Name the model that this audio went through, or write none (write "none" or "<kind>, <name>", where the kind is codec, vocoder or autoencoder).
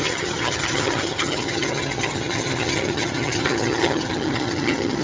vocoder, HiFi-GAN